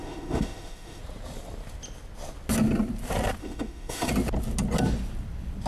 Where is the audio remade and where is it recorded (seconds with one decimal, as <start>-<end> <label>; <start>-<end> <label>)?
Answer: 0.0-1.0 remade; 1.0-3.4 recorded; 3.4-4.1 remade; 4.1-5.7 recorded